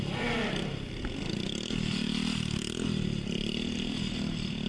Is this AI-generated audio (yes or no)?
no